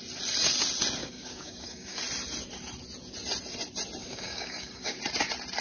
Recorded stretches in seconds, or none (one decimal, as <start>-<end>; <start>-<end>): 0.0-1.0; 2.0-4.0; 5.0-5.6